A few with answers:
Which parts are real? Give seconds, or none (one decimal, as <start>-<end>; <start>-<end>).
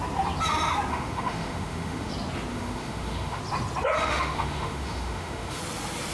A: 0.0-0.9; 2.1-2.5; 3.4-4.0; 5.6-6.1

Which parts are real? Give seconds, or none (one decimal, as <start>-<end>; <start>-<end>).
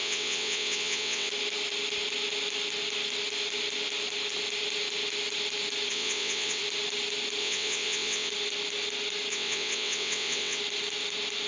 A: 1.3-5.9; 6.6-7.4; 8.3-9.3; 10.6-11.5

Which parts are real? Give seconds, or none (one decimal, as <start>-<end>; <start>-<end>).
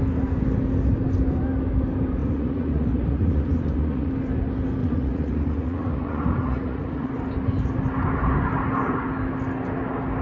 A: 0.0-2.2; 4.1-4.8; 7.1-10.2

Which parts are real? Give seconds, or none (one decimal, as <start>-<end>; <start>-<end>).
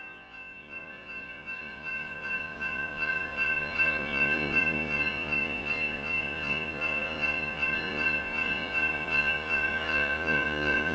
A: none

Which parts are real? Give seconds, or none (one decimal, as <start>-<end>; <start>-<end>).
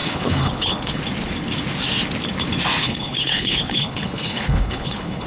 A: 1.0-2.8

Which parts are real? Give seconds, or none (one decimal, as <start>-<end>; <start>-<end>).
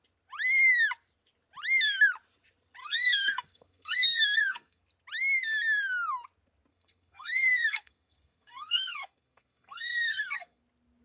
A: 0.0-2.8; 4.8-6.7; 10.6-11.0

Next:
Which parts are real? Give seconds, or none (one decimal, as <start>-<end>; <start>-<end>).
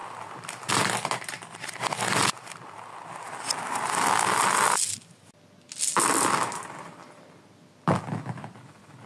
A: 0.0-9.1